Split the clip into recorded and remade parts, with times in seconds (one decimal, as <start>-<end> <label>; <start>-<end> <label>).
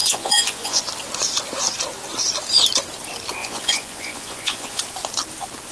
0.0-0.8 remade; 0.8-3.4 recorded; 3.4-4.8 remade; 4.8-5.7 recorded